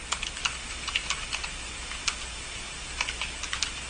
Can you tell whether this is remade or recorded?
recorded